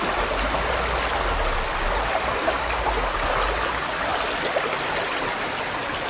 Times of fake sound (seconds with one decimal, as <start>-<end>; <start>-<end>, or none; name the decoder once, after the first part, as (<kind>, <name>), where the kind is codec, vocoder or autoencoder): none